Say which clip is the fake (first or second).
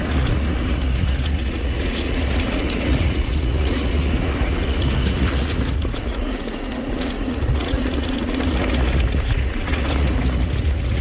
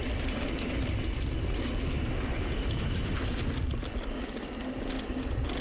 first